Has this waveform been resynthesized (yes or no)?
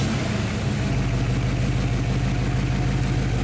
no